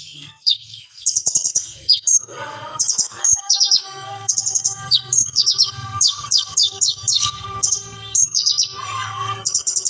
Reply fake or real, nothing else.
fake